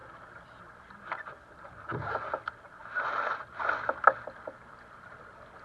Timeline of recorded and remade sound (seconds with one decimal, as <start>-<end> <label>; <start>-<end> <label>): 0.0-5.6 recorded